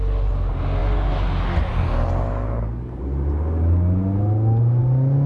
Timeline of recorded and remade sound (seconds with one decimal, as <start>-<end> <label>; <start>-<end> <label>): 0.0-5.3 recorded